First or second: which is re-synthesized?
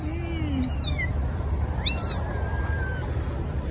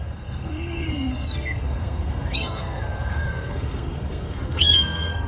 second